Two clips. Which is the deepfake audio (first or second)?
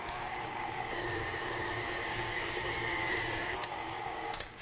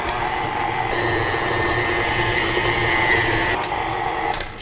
first